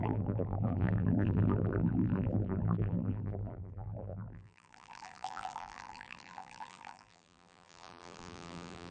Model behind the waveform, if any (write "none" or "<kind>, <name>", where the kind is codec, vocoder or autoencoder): vocoder, BigVGAN v2